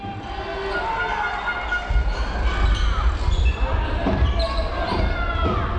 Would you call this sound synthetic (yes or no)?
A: no